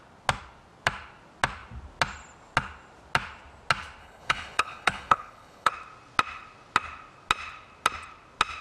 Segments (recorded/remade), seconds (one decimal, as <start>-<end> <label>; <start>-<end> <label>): 0.0-4.0 recorded; 4.0-5.7 remade; 5.7-8.6 recorded